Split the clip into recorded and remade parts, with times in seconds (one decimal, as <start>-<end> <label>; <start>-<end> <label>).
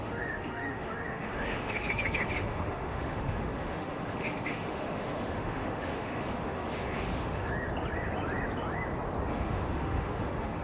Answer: 0.0-7.5 remade; 7.5-9.3 recorded; 9.3-10.6 remade